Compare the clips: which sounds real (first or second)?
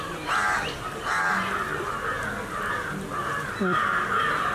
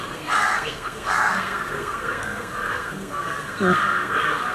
first